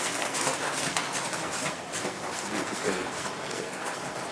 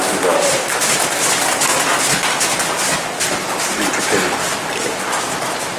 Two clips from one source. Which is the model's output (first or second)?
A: first